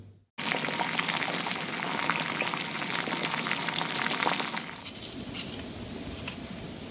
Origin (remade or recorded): recorded